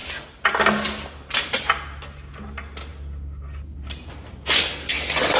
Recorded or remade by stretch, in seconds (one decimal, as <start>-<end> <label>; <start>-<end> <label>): 0.0-5.4 recorded